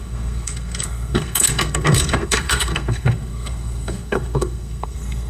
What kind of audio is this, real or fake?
fake